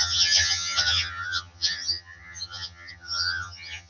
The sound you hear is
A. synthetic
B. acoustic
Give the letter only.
A